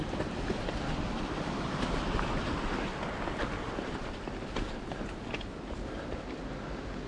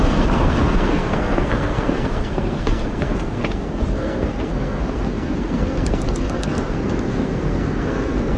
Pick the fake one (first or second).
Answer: second